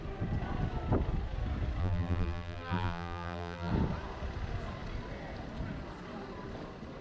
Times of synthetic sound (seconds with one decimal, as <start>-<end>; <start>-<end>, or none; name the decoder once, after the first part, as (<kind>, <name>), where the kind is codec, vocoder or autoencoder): 1.8-3.7 (vocoder, BigVGAN v2)